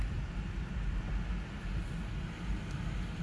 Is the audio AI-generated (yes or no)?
no